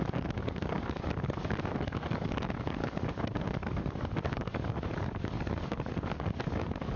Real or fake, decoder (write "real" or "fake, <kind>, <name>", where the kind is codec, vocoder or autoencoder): fake, codec, DAC